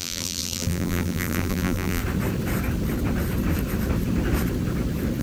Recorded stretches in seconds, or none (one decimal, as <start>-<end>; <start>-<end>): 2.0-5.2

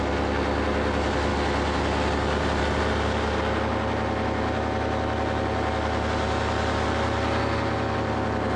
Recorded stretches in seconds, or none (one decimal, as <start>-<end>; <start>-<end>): 0.0-8.6

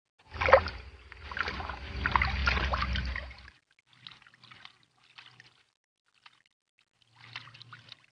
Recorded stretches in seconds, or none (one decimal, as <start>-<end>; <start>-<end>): 0.0-8.1

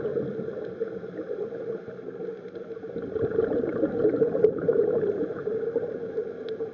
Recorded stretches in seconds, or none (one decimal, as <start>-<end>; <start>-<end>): 0.0-2.8; 6.1-6.7

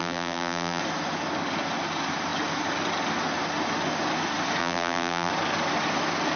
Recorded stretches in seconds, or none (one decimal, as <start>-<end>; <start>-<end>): 0.8-4.6; 5.3-6.4